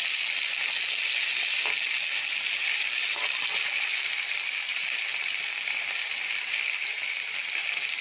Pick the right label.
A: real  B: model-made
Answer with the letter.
A